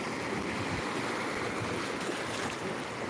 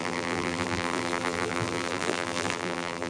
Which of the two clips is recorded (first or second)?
first